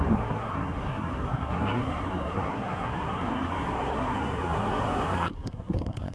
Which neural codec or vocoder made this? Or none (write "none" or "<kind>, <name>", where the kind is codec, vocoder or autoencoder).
codec, SNAC